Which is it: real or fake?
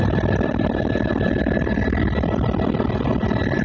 real